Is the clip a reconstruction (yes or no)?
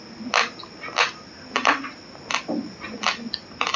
no